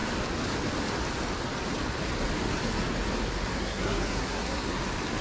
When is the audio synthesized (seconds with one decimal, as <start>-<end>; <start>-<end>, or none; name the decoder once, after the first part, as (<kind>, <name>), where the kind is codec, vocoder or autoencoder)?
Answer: 3.5-4.8 (codec, SNAC)